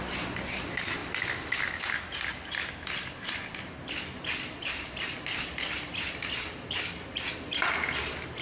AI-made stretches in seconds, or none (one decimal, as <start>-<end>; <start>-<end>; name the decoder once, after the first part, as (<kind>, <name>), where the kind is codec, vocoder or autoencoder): none